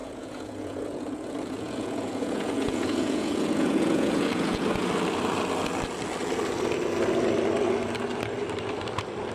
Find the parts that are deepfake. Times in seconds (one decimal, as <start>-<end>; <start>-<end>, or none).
0.0-4.9